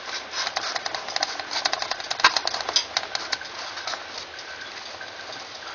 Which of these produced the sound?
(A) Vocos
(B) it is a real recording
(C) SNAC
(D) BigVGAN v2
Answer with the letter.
B